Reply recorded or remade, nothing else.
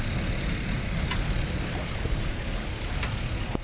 recorded